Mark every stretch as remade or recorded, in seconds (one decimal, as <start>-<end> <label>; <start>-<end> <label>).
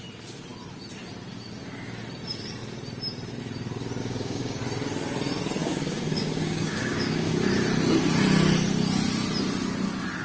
0.0-4.0 recorded; 4.0-4.6 remade; 4.6-5.6 recorded; 5.6-7.3 remade; 7.3-10.2 recorded